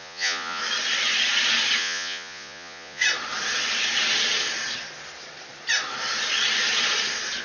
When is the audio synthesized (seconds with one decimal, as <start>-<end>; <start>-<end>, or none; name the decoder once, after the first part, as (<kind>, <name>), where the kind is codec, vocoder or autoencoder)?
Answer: 0.0-0.6 (vocoder, Vocos); 1.8-3.0